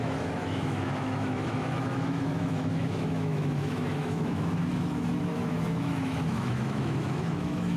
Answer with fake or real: fake